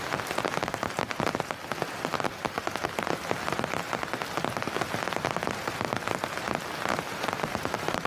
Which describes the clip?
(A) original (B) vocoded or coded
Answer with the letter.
A